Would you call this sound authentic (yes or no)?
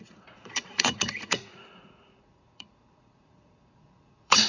no